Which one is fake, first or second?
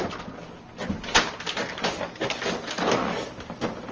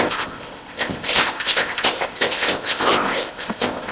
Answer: second